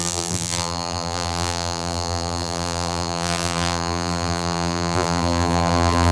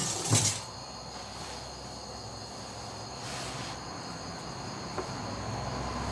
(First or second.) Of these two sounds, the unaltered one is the second